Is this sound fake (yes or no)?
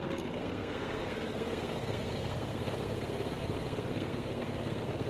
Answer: yes